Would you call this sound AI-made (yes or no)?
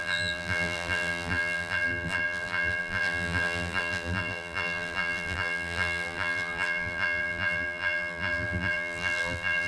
yes